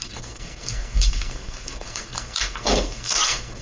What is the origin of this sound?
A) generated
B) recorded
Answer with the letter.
A